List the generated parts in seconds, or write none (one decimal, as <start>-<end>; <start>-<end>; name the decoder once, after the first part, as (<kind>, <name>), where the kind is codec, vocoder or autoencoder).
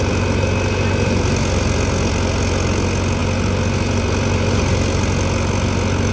none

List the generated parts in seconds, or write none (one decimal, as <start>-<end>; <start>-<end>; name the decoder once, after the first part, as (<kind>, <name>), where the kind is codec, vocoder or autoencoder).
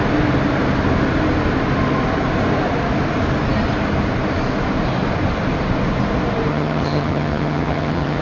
6.5-8.2 (vocoder, HiFi-GAN)